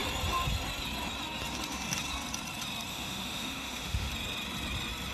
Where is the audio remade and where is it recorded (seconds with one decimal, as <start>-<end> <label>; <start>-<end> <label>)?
0.0-2.9 recorded; 2.9-4.1 remade; 4.1-5.1 recorded